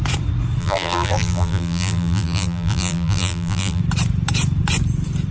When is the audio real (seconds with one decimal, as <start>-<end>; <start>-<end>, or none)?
0.0-0.6; 3.8-5.3